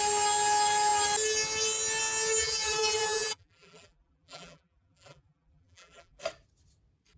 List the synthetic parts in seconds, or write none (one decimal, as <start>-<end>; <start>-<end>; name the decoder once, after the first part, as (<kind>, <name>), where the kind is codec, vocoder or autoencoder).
2.4-6.2 (vocoder, BigVGAN v2)